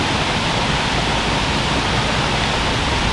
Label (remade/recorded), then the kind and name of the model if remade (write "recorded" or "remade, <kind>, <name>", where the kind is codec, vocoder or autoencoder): recorded